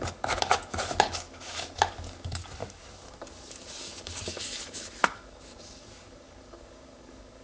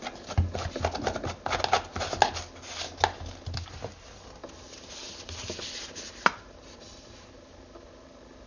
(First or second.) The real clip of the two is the second